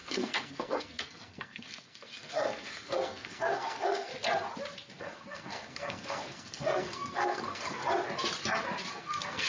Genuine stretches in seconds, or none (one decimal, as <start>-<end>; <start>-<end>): 4.1-5.0; 7.8-8.9